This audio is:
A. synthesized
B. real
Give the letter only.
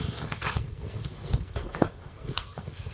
A